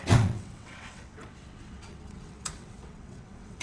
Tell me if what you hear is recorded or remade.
remade